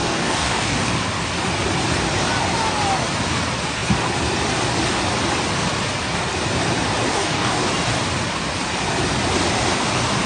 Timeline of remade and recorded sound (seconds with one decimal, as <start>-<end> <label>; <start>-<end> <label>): 0.0-0.9 remade; 0.9-7.1 recorded; 7.1-7.7 remade; 7.7-10.3 recorded